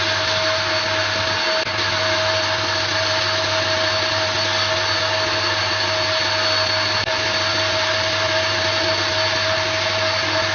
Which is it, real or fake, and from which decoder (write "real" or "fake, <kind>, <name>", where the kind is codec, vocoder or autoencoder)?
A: real